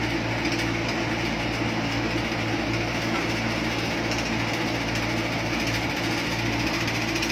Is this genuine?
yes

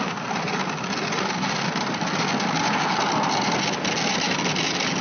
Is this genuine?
yes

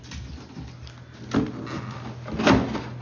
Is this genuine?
yes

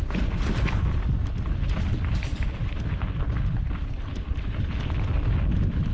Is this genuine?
yes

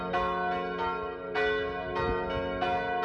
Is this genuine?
yes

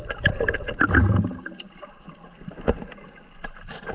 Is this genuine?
yes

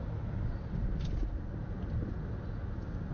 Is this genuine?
yes